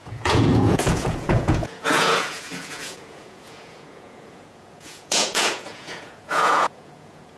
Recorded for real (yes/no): no